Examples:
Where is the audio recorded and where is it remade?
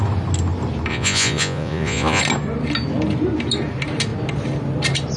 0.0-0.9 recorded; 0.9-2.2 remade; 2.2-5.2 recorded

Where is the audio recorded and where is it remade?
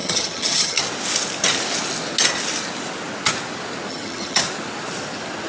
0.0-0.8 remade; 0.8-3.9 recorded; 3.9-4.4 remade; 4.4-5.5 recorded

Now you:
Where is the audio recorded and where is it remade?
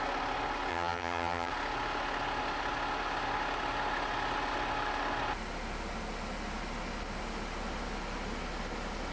0.0-0.7 recorded; 0.7-1.5 remade; 1.5-9.1 recorded